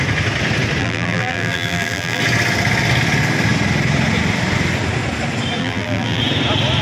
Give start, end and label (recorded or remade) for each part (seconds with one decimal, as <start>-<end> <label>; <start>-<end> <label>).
0.0-0.8 recorded; 0.8-2.2 remade; 2.2-5.6 recorded; 5.6-6.2 remade; 6.2-6.8 recorded